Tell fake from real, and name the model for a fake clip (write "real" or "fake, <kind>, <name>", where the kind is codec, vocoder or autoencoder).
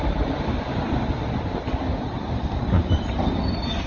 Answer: real